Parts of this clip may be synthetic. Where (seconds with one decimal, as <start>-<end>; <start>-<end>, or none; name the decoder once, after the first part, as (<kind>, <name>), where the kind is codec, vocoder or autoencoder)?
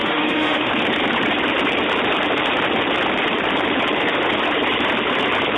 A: 0.0-0.7 (autoencoder, DAC-VAE)